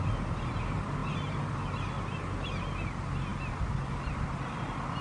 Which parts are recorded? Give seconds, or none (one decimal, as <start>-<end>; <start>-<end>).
0.0-5.0